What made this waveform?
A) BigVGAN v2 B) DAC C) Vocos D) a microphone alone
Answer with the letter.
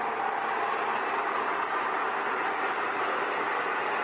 D